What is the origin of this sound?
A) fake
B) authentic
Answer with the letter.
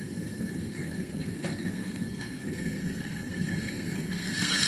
A